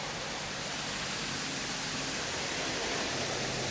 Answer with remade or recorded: recorded